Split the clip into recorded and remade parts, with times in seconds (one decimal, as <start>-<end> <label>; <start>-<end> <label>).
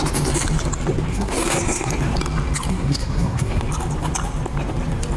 0.0-1.1 recorded; 1.1-1.9 remade; 1.9-2.7 recorded; 2.7-3.6 remade; 3.6-5.2 recorded